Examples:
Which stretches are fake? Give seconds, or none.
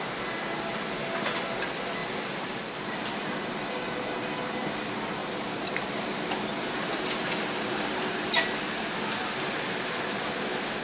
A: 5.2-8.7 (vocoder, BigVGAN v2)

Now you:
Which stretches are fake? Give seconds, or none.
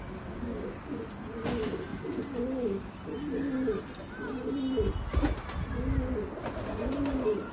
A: none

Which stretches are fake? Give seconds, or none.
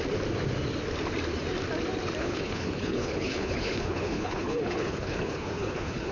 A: 2.2-6.1 (codec, HILCodec)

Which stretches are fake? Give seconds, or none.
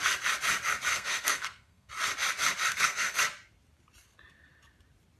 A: 0.9-1.9 (codec, SNAC); 2.7-3.2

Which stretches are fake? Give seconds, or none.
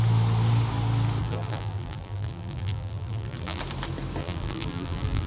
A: 1.2-3.6 (vocoder, BigVGAN v2); 4.2-5.3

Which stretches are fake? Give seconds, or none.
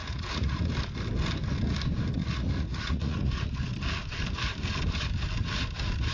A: 0.0-0.7 (vocoder, Vocos); 2.2-3.3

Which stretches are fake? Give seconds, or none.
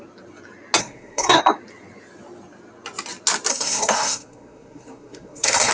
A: 0.8-1.4 (codec, SNAC); 3.5-5.7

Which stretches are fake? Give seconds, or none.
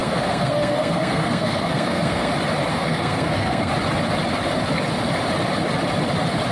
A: 0.0-2.3 (codec, SNAC); 2.7-3.7